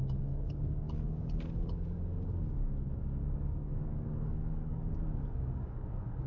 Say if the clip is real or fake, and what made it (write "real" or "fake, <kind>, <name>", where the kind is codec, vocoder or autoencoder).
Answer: fake, codec, DAC